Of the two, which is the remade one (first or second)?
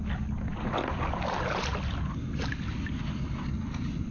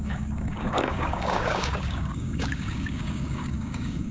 second